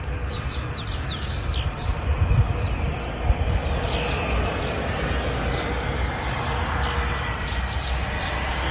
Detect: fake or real real